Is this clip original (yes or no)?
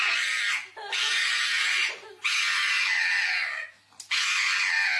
yes